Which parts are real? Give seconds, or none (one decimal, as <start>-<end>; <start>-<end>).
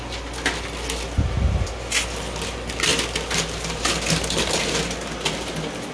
0.0-5.9